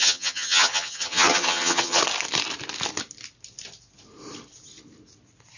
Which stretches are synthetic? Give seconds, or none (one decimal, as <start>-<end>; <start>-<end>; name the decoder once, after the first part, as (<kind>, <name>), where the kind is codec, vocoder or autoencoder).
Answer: 0.0-2.0 (vocoder, HiFi-GAN)